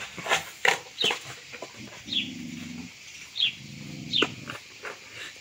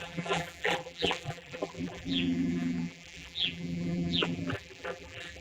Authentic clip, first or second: first